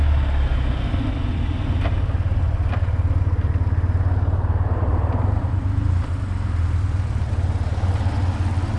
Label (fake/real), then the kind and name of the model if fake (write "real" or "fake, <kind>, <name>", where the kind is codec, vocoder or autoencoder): real